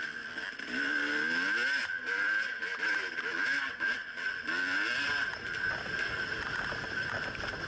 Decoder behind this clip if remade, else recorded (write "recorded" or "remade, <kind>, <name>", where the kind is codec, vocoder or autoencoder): recorded